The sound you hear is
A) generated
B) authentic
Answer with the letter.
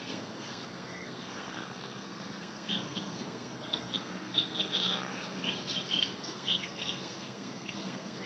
A